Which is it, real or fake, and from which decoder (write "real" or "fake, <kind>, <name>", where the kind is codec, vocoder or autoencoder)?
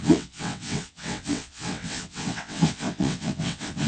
fake, vocoder, WaveNeXt